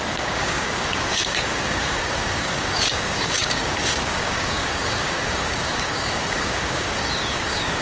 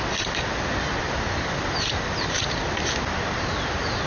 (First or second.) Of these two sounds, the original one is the second